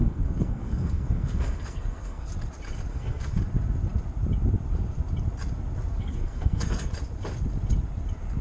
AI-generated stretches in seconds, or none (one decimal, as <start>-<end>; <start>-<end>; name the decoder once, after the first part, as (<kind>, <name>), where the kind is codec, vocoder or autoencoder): 0.0-2.3 (codec, SNAC); 2.9-3.4; 6.0-6.9